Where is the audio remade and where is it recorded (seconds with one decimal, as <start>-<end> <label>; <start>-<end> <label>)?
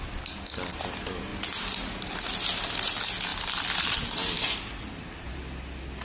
0.0-3.3 recorded; 3.3-4.0 remade; 4.0-6.0 recorded